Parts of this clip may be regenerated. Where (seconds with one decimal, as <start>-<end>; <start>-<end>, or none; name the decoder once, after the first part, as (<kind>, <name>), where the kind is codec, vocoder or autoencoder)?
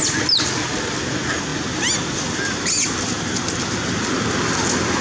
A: none